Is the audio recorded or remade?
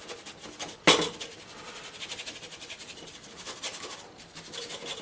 recorded